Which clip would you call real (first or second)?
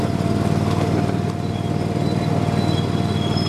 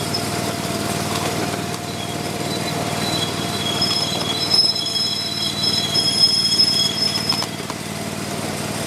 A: first